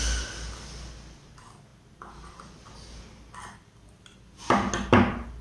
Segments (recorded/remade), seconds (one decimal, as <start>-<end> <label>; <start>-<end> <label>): 0.0-5.4 recorded